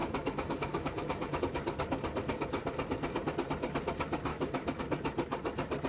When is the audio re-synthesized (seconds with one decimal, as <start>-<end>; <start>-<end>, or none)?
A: 0.0-1.4; 4.3-4.8